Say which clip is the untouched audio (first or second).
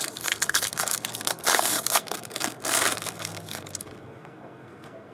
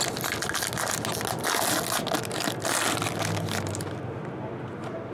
second